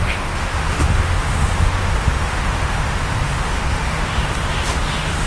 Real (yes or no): no